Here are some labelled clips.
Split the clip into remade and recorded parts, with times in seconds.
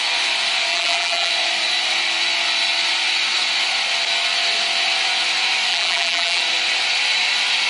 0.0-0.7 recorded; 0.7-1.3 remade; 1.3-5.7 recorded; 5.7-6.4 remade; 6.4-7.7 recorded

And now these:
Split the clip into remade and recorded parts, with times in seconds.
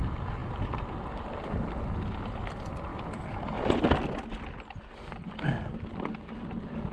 0.0-6.9 recorded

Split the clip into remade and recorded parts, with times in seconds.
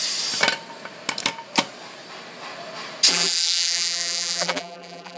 0.0-3.1 recorded; 3.1-5.2 remade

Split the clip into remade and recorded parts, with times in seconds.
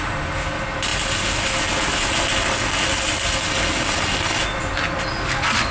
0.0-5.7 recorded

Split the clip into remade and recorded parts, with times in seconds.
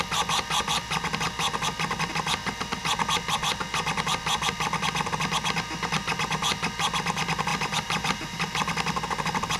0.0-7.5 recorded; 7.5-8.4 remade; 8.4-9.6 recorded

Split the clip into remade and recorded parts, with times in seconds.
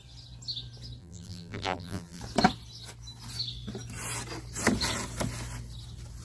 0.0-1.0 recorded; 1.0-2.2 remade; 2.2-6.2 recorded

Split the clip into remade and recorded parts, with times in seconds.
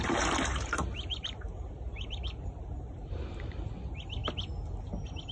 0.0-0.5 recorded; 0.5-3.7 remade; 3.7-5.3 recorded